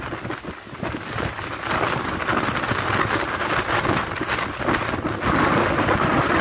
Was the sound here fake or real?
real